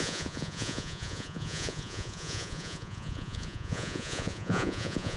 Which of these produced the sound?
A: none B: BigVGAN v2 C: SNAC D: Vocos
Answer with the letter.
D